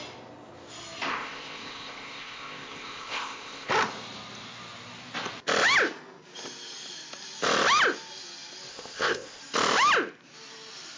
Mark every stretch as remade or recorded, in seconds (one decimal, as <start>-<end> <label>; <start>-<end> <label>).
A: 0.0-1.1 recorded; 1.1-3.7 remade; 3.7-8.7 recorded; 8.7-9.4 remade; 9.4-11.0 recorded